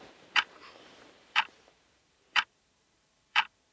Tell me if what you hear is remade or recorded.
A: remade